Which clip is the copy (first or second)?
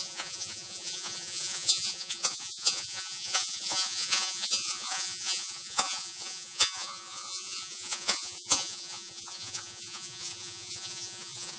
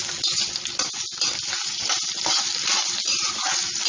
first